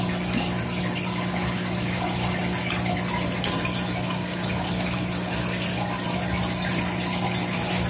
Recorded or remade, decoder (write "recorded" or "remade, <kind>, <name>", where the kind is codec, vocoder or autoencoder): recorded